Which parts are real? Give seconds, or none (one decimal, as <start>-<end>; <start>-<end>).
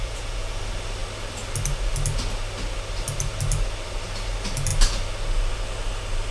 0.6-6.3